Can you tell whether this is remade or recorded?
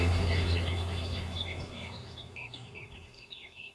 remade